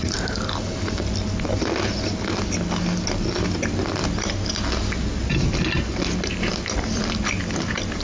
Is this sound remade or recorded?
recorded